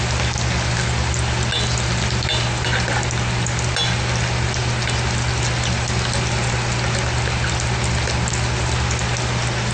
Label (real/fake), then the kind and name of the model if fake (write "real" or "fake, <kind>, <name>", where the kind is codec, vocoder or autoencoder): real